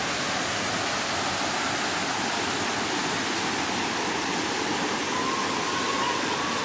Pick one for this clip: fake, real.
real